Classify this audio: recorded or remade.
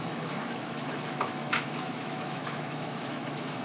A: remade